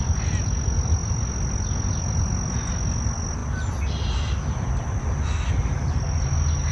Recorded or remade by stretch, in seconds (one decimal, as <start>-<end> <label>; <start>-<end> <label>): 0.0-6.7 recorded